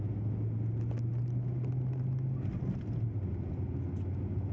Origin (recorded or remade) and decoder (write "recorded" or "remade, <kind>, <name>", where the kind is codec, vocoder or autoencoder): recorded